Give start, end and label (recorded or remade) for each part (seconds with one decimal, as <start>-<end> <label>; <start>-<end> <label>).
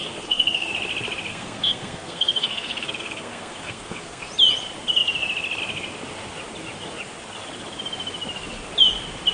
0.0-0.7 remade; 0.7-1.3 recorded; 1.3-4.3 remade; 4.3-9.3 recorded